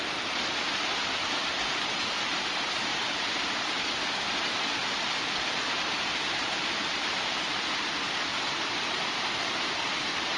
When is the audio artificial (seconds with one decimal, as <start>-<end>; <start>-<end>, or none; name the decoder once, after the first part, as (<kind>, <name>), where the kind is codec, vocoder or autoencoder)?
0.0-4.8 (vocoder, BigVGAN v2); 5.4-10.4